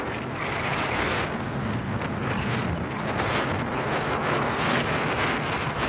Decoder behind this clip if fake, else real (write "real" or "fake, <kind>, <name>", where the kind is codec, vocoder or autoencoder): real